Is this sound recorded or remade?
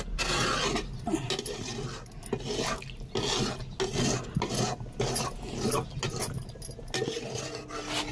recorded